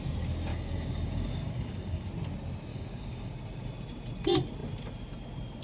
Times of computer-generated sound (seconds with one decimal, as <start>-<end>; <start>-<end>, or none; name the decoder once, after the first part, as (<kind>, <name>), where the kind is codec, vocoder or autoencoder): 0.5-2.1 (codec, DAC); 2.7-3.3